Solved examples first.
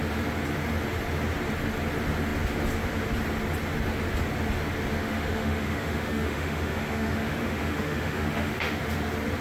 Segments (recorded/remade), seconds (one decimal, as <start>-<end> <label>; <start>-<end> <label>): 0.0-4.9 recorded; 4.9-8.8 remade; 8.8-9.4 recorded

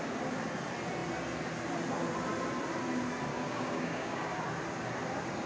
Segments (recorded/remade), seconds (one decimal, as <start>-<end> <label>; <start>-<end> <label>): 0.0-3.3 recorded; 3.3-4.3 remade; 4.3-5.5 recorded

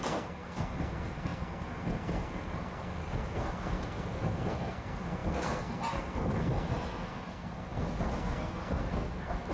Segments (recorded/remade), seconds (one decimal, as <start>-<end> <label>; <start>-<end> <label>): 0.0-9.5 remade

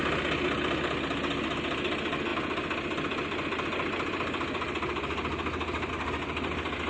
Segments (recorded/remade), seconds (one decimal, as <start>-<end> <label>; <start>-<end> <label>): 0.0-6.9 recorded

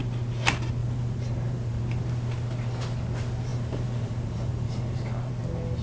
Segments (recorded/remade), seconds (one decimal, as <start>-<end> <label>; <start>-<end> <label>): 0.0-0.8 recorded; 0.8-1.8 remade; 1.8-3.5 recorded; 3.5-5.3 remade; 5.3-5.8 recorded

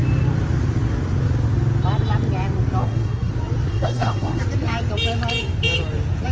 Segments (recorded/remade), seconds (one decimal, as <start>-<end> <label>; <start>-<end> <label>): 0.0-2.8 recorded; 2.8-3.3 remade; 3.3-3.7 recorded; 3.7-4.4 remade; 4.4-6.3 recorded